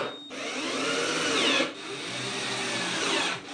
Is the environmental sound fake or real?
real